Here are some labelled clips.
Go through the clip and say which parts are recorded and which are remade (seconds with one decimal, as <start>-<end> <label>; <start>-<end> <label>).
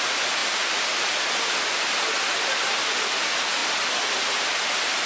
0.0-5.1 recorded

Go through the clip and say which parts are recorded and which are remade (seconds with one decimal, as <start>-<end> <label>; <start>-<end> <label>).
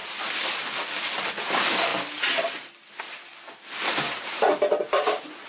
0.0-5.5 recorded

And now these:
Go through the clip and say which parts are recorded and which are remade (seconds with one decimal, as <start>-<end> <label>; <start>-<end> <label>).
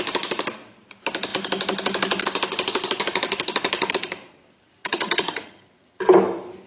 0.0-4.8 recorded; 4.8-6.0 remade; 6.0-6.7 recorded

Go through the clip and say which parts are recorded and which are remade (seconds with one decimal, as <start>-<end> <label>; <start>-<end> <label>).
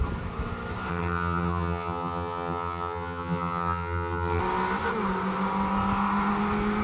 0.0-0.9 recorded; 0.9-4.4 remade; 4.4-6.8 recorded